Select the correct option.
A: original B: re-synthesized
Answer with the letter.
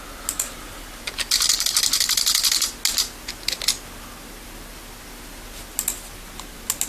A